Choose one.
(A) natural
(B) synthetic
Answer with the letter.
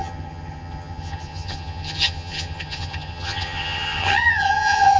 B